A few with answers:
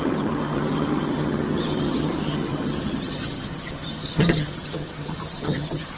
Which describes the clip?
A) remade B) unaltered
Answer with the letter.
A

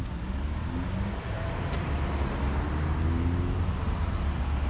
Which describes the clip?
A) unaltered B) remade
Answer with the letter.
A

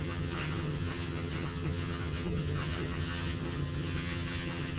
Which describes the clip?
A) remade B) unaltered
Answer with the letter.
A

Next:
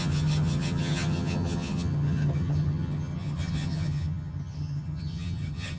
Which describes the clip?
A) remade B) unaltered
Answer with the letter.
A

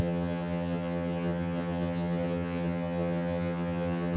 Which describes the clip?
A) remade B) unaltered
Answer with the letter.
A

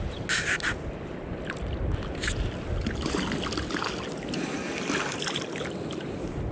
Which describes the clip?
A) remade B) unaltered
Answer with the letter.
B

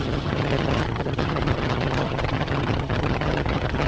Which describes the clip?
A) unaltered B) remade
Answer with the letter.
B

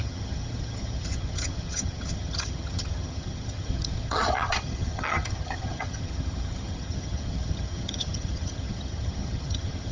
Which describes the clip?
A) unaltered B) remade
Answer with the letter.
B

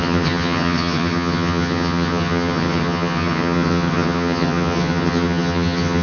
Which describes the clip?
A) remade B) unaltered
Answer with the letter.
A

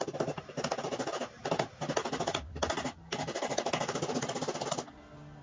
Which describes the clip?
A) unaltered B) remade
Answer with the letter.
A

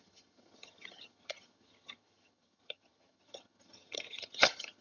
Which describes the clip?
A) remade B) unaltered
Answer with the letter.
A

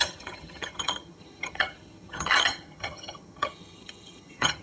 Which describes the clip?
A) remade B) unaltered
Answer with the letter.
A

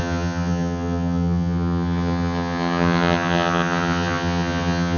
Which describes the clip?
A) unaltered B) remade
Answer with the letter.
B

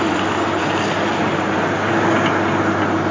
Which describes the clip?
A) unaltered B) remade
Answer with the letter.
A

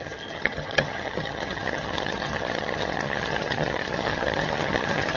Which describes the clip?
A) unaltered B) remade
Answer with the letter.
B